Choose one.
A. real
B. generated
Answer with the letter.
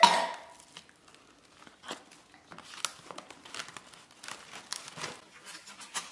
A